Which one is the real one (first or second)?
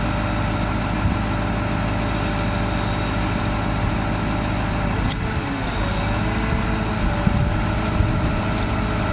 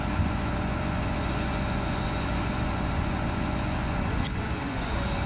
first